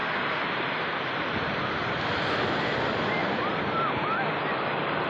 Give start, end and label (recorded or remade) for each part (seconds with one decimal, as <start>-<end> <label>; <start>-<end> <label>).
0.0-1.6 remade; 1.6-3.2 recorded; 3.2-4.4 remade; 4.4-5.1 recorded